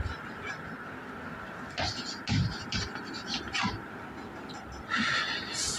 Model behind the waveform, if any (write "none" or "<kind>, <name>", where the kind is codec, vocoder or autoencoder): none